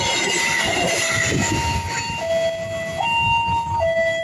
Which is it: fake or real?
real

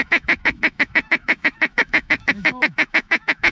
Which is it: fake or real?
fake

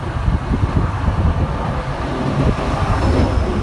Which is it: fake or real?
real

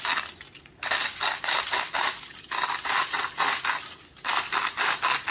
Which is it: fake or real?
real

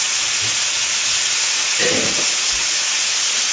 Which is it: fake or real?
fake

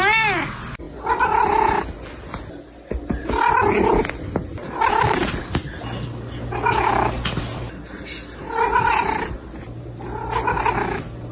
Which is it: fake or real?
real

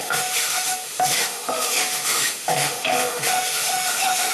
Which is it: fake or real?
fake